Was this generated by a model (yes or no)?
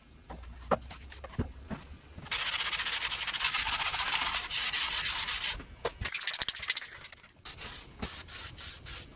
no